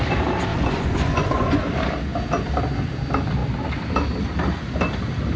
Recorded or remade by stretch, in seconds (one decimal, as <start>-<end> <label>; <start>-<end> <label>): 0.0-0.5 recorded; 0.5-1.6 remade; 1.6-5.4 recorded

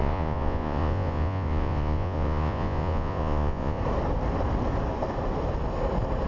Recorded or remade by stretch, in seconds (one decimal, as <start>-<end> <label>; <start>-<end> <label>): 0.0-3.8 remade; 3.8-6.3 recorded

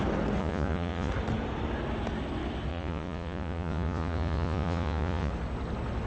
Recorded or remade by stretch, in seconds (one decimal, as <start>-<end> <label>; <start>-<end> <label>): 0.0-0.4 recorded; 0.4-1.1 remade; 1.1-2.7 recorded; 2.7-5.3 remade; 5.3-6.1 recorded

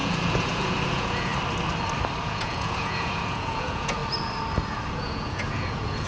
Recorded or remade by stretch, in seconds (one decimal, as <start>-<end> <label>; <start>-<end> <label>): 0.0-1.3 remade; 1.3-2.2 recorded; 2.2-4.0 remade; 4.0-4.9 recorded; 4.9-6.1 remade

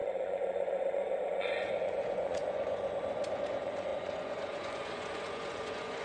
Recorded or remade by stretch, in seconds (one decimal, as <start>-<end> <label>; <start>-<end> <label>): 0.0-6.0 remade

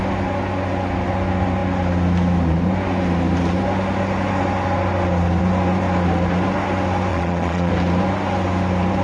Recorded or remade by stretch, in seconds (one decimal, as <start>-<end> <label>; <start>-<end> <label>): 0.0-7.1 recorded; 7.1-7.7 remade; 7.7-9.0 recorded

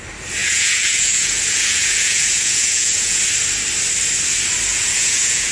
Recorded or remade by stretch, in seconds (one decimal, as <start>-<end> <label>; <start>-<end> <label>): 0.0-0.4 recorded; 0.4-3.2 remade; 3.2-4.7 recorded; 4.7-5.5 remade

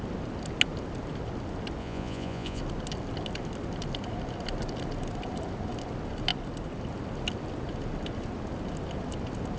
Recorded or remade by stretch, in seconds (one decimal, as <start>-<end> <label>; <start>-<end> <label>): 0.0-1.8 recorded; 1.8-2.6 remade; 2.6-9.6 recorded